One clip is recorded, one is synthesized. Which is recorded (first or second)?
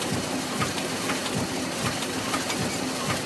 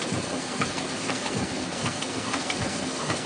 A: first